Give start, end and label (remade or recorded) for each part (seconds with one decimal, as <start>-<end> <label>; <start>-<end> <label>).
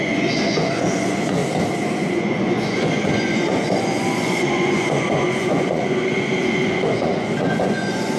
0.0-1.4 remade; 1.4-2.1 recorded; 2.1-8.2 remade